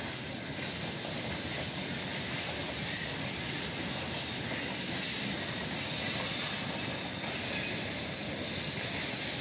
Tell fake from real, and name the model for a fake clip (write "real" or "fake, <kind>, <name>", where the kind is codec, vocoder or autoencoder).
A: real